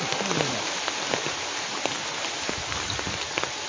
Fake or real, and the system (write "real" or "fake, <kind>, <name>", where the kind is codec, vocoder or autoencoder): real